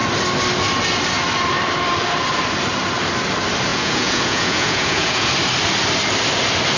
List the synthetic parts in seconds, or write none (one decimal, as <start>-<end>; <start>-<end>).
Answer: 3.7-5.3

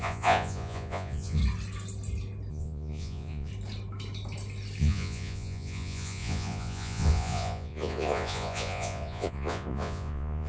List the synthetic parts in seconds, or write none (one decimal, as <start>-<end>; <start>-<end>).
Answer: 0.0-1.4; 2.5-3.5; 4.8-10.5

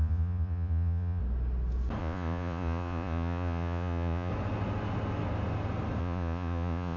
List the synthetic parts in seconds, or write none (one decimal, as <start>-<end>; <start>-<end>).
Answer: 0.0-1.2; 2.0-4.3; 6.0-7.0